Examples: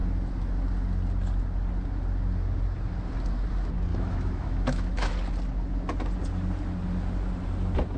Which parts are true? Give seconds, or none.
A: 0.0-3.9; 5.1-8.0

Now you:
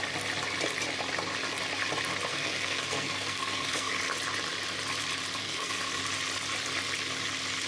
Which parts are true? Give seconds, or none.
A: 0.0-2.3; 4.0-5.4; 6.0-7.7

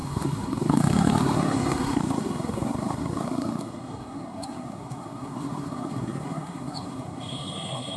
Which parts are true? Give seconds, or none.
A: none

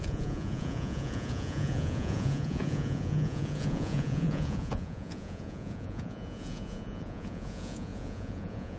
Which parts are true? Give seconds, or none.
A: none